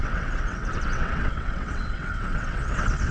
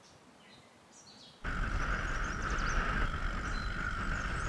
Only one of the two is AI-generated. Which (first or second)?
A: first